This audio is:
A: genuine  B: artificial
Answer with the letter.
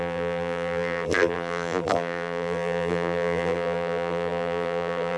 B